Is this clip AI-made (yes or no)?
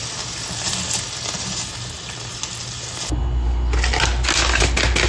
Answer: no